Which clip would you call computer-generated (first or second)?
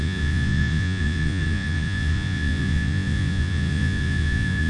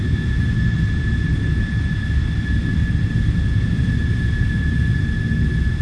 first